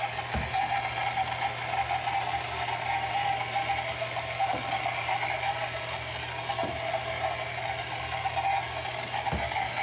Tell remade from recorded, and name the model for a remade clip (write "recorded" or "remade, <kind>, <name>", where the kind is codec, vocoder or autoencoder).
recorded